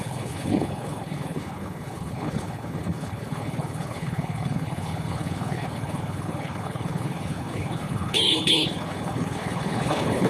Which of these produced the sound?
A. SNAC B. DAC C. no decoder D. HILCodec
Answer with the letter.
D